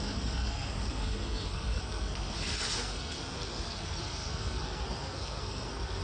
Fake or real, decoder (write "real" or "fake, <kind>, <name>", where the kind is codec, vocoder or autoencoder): fake, codec, SNAC